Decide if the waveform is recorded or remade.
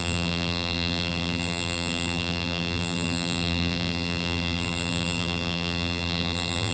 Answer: remade